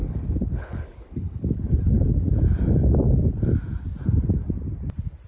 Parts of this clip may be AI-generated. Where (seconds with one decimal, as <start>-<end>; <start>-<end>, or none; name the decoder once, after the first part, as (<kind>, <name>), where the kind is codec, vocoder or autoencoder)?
0.0-2.1 (codec, HILCodec)